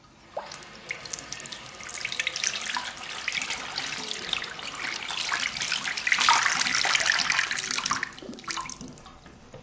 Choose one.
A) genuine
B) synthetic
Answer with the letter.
A